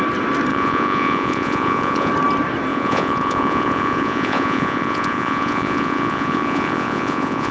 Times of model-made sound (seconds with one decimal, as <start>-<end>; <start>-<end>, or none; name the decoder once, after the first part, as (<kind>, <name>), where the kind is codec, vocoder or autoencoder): 0.5-2.1 (vocoder, Vocos); 2.7-7.5